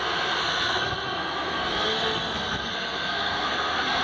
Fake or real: fake